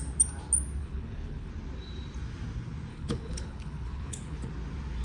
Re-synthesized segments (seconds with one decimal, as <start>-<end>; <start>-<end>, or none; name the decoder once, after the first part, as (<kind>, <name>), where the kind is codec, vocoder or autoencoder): 0.8-1.5 (codec, HILCodec); 2.9-4.5